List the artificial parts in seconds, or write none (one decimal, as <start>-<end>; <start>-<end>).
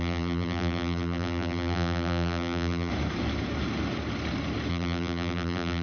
0.0-2.9; 4.7-5.8